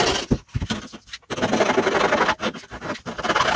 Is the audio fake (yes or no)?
no